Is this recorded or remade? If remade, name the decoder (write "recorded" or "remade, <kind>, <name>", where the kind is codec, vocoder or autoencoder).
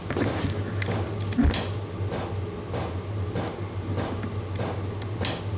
recorded